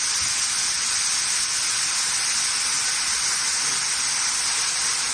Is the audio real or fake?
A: real